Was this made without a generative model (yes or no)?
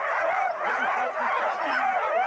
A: no